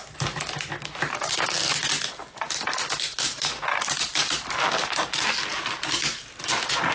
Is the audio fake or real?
real